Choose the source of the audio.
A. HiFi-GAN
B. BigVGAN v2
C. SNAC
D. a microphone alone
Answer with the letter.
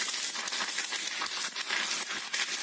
D